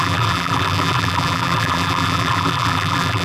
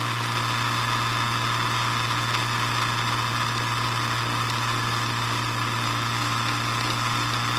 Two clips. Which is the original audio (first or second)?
second